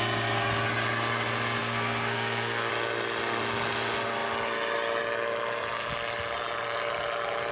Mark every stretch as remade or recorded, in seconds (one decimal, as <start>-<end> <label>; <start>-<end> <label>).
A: 0.0-1.6 recorded; 1.6-2.7 remade; 2.7-7.5 recorded